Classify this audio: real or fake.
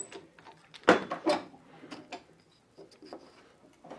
real